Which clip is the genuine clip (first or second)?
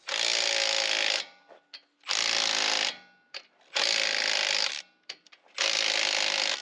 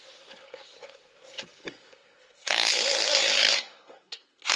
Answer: first